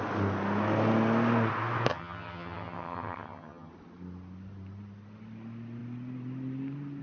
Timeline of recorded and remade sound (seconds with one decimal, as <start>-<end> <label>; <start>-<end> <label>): 0.0-1.9 recorded; 1.9-3.7 remade; 3.7-7.0 recorded